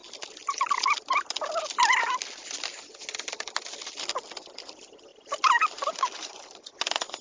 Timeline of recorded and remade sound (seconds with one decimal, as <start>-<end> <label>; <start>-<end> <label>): 0.0-5.1 recorded; 5.1-6.7 remade; 6.7-7.2 recorded

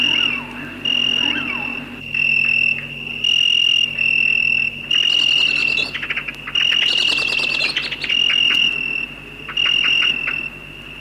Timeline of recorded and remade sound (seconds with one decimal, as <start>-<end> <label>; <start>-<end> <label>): 0.0-11.0 recorded

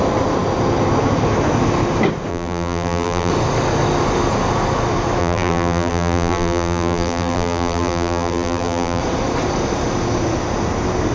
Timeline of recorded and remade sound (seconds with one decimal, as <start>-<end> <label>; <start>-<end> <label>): 0.0-2.3 recorded; 2.3-3.3 remade; 3.3-5.2 recorded; 5.2-9.0 remade; 9.0-11.1 recorded

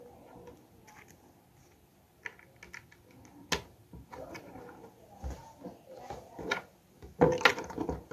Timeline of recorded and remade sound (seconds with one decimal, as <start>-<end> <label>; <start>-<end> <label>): 0.0-3.8 recorded; 3.8-4.6 remade; 4.6-8.1 recorded

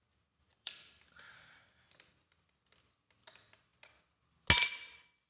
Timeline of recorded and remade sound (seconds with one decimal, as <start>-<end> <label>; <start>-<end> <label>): 0.0-0.5 recorded; 0.5-1.3 remade; 1.3-5.3 recorded

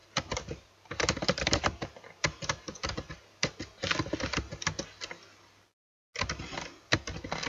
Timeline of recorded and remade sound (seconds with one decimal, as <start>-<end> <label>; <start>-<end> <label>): 0.0-3.6 remade; 3.6-7.5 recorded

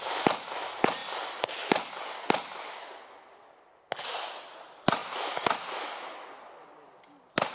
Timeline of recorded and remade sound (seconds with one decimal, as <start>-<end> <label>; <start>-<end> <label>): 0.0-5.0 recorded; 5.0-6.3 remade; 6.3-7.5 recorded

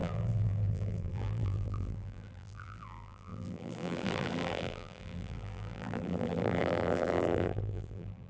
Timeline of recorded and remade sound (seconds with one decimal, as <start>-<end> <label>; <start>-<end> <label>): 0.0-8.3 remade